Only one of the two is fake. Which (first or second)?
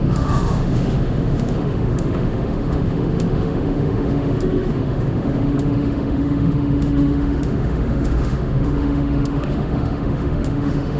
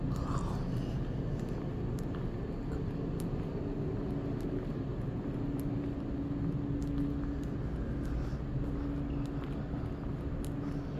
first